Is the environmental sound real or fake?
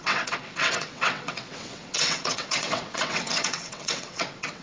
fake